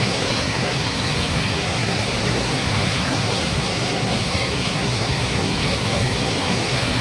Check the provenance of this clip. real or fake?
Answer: fake